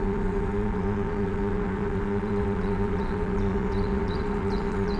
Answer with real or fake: fake